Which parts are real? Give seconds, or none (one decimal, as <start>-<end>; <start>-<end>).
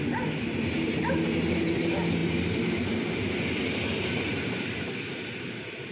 0.0-5.9